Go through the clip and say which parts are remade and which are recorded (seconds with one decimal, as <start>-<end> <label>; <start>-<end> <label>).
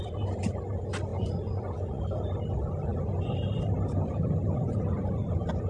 0.0-1.1 recorded; 1.1-2.0 remade; 2.0-5.7 recorded